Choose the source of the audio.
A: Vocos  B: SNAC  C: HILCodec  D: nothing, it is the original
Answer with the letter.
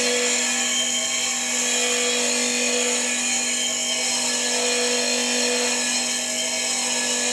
D